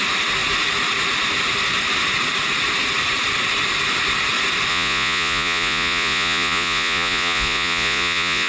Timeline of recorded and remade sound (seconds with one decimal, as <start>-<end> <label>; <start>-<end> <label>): 0.0-4.7 recorded; 4.7-8.5 remade